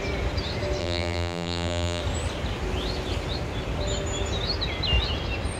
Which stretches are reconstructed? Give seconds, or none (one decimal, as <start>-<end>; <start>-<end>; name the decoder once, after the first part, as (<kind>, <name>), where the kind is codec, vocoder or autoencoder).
0.8-2.0 (vocoder, BigVGAN v2)